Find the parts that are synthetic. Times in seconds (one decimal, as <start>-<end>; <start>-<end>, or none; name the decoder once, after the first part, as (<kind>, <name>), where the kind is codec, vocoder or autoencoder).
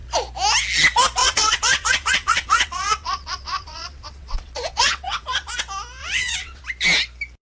1.2-5.5 (vocoder, WaveNeXt); 6.0-6.6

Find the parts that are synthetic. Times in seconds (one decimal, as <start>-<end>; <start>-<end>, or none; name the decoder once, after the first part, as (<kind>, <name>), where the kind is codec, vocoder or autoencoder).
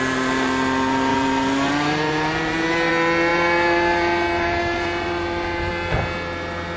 1.1-2.9 (vocoder, BigVGAN v2); 3.3-5.7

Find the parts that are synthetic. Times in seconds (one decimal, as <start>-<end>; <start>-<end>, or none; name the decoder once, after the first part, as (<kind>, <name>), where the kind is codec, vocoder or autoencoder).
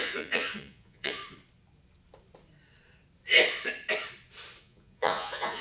0.0-1.2 (vocoder, Vocos); 4.6-5.6